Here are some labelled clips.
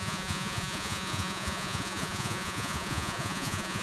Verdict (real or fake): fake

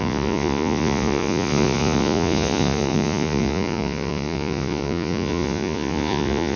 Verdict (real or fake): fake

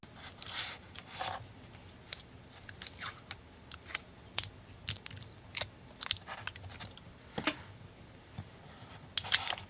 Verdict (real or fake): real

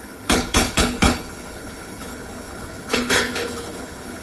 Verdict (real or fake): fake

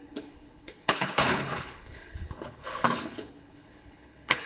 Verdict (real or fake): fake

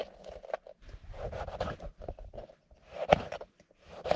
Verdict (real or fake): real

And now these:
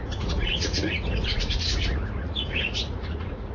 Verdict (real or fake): fake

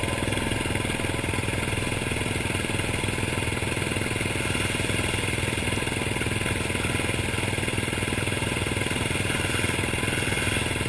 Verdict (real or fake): real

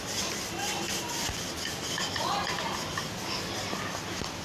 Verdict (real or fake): real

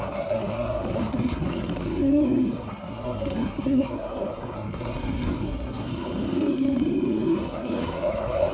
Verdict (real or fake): fake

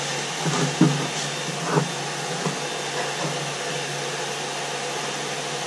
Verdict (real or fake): real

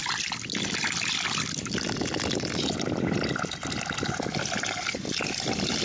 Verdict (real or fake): real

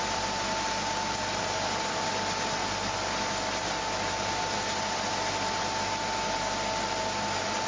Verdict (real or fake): real